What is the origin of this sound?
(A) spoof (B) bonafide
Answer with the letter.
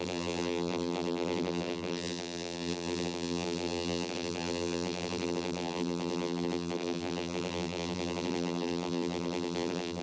A